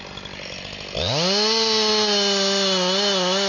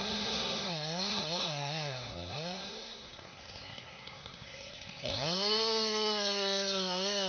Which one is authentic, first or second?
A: first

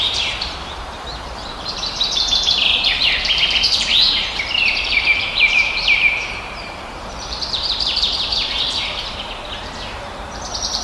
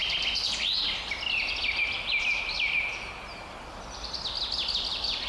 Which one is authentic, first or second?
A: second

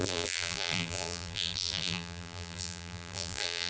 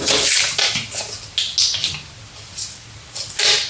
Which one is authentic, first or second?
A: second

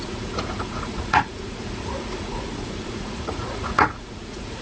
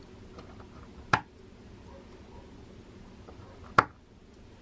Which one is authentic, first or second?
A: second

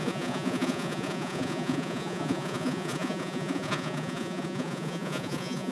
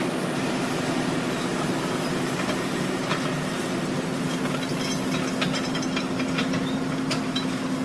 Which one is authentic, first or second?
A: second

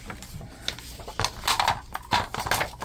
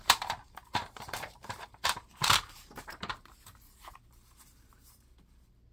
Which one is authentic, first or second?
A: first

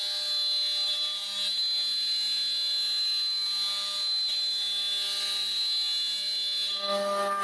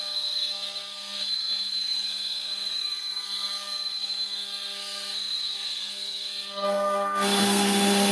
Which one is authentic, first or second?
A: first